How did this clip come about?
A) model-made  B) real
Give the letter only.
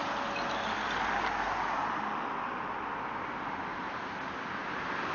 B